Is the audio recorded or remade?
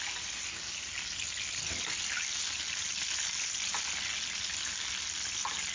recorded